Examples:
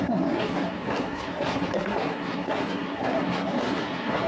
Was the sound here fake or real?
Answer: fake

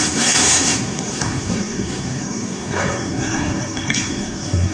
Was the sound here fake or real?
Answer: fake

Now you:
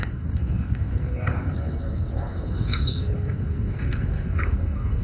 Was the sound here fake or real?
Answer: fake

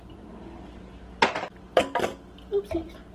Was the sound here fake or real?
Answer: real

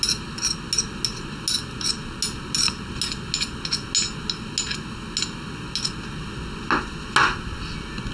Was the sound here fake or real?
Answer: real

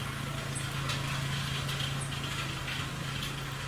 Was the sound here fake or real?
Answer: real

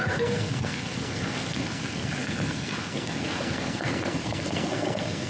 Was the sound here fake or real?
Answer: fake